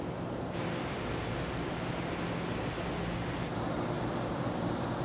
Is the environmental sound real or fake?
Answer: real